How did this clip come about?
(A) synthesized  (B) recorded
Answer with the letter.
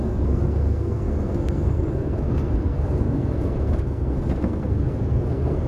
A